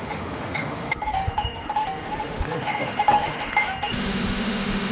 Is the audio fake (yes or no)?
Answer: yes